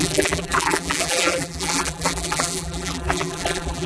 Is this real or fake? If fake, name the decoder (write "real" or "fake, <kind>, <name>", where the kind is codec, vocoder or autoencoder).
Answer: fake, vocoder, BigVGAN v2